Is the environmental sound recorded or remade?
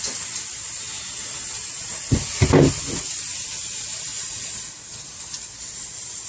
remade